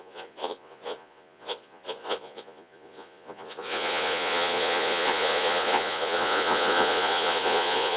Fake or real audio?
fake